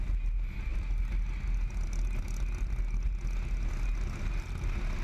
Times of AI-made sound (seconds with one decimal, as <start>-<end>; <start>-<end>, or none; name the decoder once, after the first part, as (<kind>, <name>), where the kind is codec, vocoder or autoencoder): none